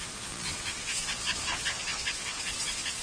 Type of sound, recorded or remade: remade